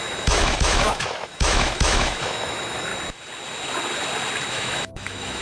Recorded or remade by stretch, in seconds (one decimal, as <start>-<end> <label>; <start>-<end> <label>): 0.0-2.9 remade; 2.9-4.5 recorded; 4.5-5.4 remade